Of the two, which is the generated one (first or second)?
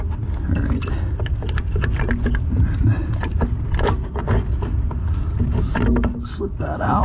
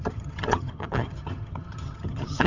second